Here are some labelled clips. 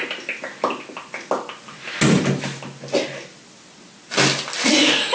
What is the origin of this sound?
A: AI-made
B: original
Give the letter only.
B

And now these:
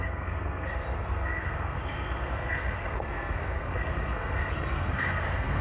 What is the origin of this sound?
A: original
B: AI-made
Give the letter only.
B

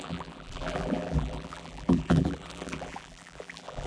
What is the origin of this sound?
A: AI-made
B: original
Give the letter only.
A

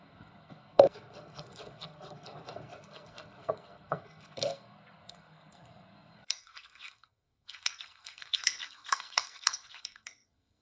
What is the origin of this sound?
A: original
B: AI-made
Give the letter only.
B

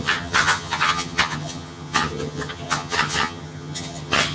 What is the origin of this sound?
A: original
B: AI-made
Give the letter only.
B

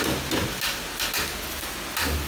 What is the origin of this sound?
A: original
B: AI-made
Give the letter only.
A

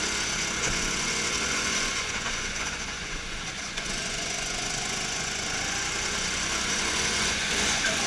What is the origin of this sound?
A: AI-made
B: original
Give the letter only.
A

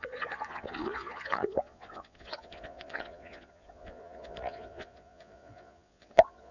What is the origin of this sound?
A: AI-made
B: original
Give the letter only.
A